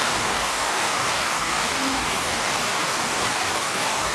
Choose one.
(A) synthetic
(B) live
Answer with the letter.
A